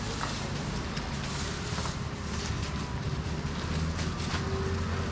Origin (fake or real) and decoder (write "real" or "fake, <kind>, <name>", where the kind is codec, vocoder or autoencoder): real